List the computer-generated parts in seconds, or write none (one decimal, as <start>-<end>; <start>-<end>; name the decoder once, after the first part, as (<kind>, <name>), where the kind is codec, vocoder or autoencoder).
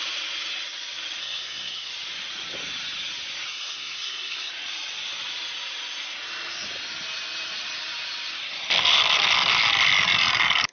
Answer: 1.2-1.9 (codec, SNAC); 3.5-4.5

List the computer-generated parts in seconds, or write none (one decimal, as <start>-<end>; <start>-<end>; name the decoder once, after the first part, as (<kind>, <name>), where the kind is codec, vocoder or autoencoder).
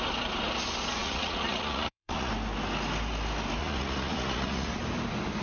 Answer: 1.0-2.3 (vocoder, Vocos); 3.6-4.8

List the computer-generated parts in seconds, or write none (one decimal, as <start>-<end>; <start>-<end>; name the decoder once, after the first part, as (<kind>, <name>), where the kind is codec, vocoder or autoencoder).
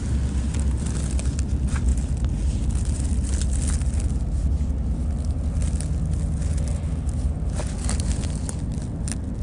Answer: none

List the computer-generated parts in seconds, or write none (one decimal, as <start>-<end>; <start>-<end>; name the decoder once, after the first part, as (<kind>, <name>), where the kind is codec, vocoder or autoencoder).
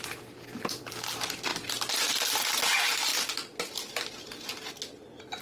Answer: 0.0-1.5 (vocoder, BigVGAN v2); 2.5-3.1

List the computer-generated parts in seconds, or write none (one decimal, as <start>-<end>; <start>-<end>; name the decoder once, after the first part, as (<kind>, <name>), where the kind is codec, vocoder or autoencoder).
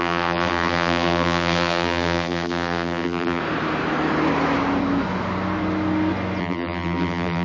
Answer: 0.0-3.4 (vocoder, BigVGAN v2); 6.4-7.4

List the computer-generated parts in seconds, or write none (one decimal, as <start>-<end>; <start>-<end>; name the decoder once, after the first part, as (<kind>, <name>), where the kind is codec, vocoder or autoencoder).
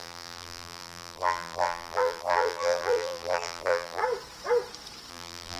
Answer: 0.0-4.0 (vocoder, BigVGAN v2); 5.1-5.6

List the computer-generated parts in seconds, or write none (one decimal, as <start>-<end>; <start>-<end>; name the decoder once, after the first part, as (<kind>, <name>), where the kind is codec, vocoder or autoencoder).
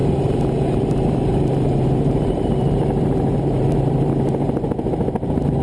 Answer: 0.0-5.6 (vocoder, BigVGAN v2)